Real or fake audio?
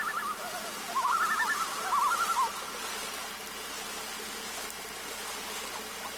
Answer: real